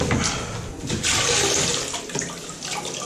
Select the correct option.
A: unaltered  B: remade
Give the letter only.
A